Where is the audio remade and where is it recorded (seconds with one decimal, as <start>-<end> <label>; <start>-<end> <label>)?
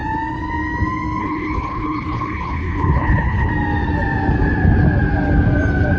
0.0-1.2 recorded; 1.2-3.5 remade; 3.5-6.0 recorded